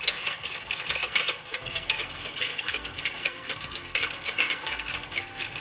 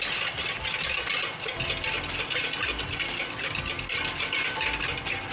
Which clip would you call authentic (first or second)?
second